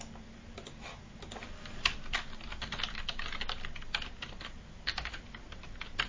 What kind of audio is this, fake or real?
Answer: real